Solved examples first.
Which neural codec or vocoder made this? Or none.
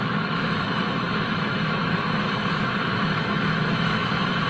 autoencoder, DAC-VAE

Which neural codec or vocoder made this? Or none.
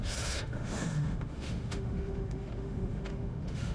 autoencoder, DAC-VAE